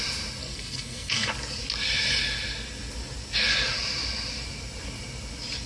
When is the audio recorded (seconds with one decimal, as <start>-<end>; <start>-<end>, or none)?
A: 0.0-0.4; 1.3-5.7